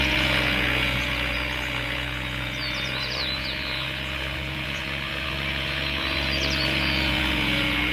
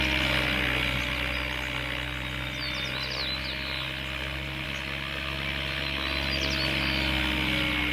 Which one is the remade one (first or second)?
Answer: first